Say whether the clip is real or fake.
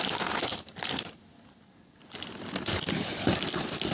real